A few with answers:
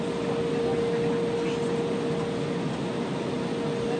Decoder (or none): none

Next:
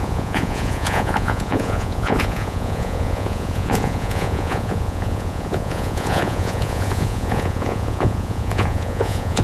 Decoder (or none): vocoder, Vocos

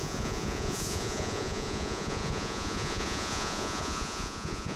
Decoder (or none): vocoder, Vocos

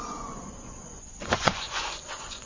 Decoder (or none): vocoder, Vocos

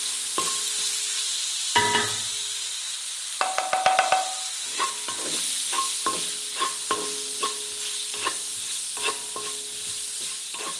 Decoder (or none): none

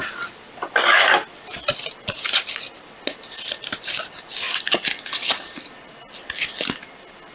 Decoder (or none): none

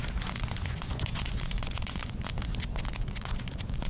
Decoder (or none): vocoder, Vocos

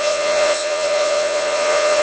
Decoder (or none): vocoder, Vocos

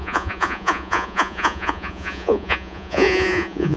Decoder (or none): vocoder, Vocos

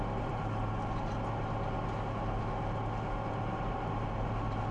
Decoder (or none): none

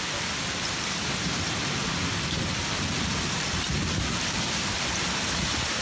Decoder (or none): none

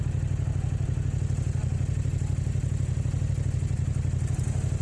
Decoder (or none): none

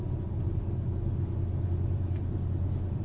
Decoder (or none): none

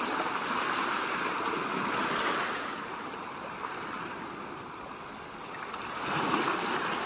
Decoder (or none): none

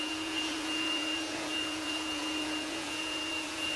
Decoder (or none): vocoder, Vocos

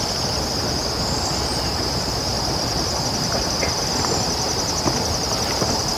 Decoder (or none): none